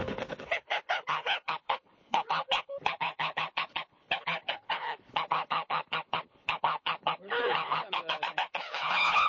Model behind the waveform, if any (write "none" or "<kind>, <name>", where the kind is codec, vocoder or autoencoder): codec, HILCodec